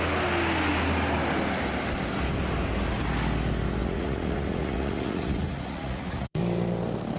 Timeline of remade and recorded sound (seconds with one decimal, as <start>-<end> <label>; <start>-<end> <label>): 0.0-3.8 recorded; 3.8-6.4 remade; 6.4-7.2 recorded